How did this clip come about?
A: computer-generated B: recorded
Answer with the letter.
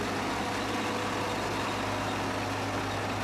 B